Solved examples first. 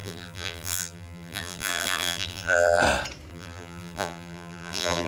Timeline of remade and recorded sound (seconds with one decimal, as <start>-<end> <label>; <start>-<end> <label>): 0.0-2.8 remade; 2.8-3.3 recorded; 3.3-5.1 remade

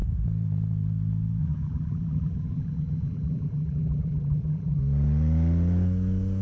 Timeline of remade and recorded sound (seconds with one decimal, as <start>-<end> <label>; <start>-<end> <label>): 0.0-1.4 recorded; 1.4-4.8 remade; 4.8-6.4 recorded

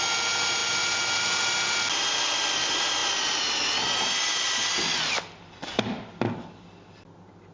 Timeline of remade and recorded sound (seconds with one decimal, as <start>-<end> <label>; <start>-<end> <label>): 0.0-7.5 recorded

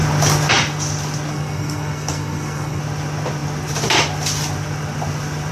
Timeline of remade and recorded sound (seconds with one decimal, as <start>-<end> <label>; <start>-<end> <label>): 0.0-1.3 recorded; 1.3-2.8 remade; 2.8-5.5 recorded